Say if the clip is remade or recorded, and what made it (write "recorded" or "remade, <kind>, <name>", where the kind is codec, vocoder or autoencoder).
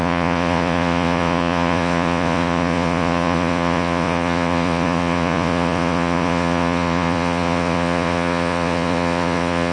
remade, vocoder, Vocos